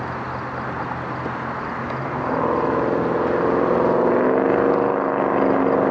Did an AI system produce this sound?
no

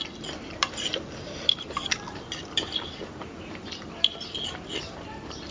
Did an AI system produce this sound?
yes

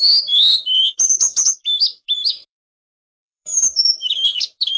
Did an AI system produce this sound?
yes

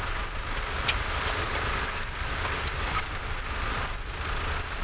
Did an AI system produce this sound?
no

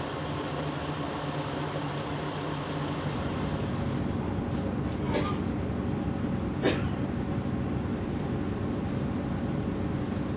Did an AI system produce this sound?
no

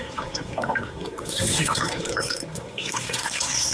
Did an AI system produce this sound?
yes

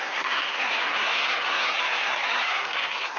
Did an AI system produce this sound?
yes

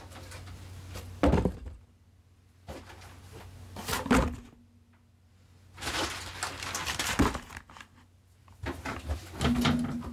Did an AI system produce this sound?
no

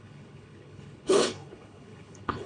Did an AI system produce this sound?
yes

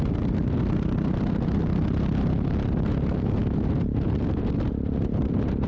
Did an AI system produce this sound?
no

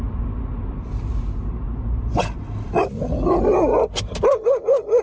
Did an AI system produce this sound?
no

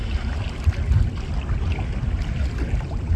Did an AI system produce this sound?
no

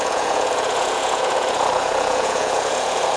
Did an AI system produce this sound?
yes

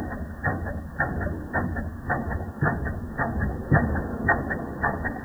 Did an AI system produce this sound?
yes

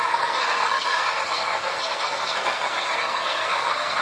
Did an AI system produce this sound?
yes